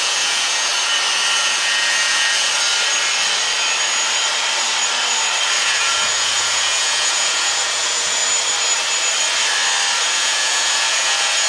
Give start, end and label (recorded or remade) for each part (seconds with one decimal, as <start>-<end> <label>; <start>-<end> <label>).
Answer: 0.0-0.7 remade; 0.7-1.3 recorded; 1.3-2.5 remade; 2.5-5.6 recorded; 5.6-8.2 remade; 8.2-10.0 recorded; 10.0-11.5 remade

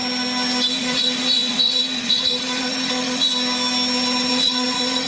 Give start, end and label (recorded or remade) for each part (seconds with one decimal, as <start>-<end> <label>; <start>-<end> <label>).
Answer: 0.0-0.7 recorded; 0.7-3.3 remade; 3.3-4.3 recorded; 4.3-5.1 remade